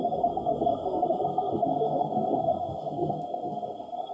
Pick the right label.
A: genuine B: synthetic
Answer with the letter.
B